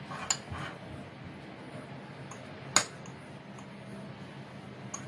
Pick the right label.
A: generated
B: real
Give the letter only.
B